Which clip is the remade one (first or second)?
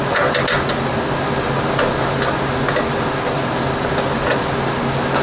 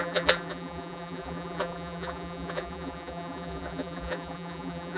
second